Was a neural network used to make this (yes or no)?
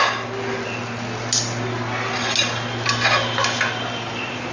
no